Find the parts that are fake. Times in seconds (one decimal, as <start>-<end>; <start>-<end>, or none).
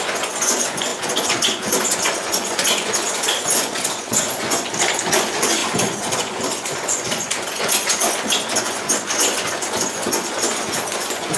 0.0-11.4